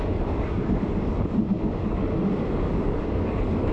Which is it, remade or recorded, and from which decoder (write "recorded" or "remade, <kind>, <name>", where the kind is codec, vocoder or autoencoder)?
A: remade, codec, DAC